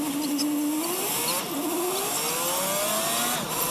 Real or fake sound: real